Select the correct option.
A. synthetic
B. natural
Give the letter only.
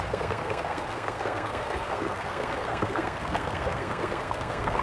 A